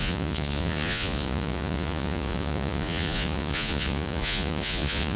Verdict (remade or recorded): remade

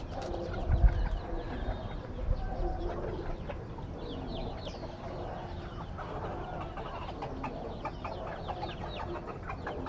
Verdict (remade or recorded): recorded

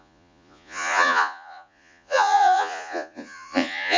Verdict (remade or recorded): remade